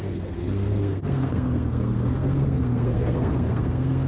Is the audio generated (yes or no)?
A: yes